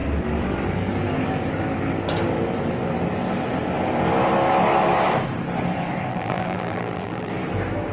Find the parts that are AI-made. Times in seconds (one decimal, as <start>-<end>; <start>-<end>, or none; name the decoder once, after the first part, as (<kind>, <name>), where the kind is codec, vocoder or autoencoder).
6.1-7.3 (vocoder, BigVGAN v2)